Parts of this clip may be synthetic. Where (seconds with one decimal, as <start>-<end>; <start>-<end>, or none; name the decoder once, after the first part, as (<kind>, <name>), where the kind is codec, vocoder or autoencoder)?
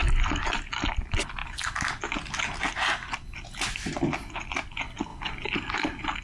none